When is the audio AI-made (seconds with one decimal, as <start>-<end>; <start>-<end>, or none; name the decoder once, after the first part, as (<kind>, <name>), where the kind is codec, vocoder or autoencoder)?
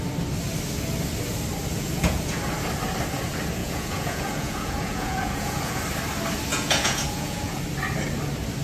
1.7-2.4 (vocoder, Vocos); 3.6-5.8; 6.5-7.6